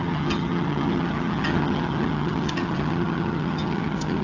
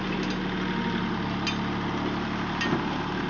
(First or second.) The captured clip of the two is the second